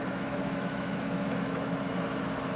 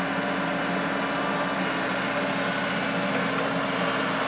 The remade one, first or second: first